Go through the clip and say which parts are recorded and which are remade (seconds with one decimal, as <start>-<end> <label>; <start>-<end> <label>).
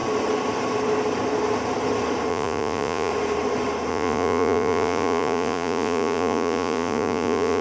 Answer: 0.0-2.3 recorded; 2.3-3.1 remade; 3.1-3.9 recorded; 3.9-7.6 remade